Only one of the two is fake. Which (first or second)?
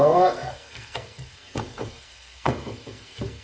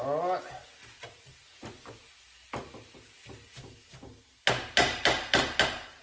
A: first